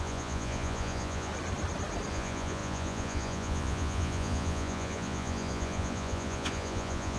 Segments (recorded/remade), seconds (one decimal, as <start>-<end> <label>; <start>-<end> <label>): 0.0-1.3 remade; 1.3-2.1 recorded; 2.1-7.2 remade